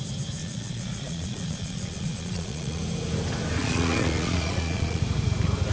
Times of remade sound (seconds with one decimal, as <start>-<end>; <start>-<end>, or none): 0.4-2.8; 3.6-5.0